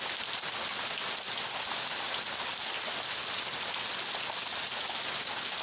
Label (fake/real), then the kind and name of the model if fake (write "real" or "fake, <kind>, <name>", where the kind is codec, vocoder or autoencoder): real